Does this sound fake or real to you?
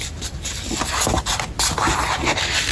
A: real